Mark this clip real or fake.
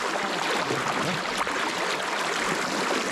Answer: real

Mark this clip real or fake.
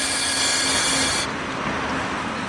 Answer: real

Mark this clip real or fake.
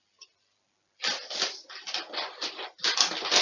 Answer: real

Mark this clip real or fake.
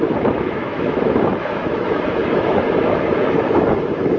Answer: fake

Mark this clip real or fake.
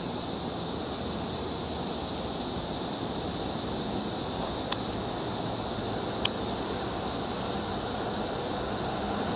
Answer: real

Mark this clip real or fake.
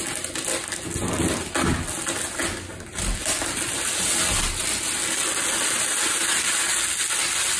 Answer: real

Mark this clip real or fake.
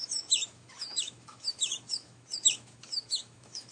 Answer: fake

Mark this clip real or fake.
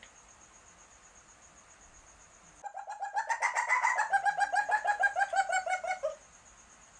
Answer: real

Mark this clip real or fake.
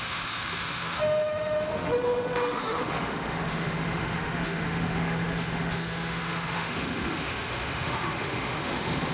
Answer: fake